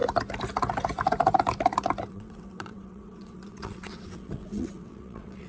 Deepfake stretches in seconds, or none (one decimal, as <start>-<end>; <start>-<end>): 2.1-5.5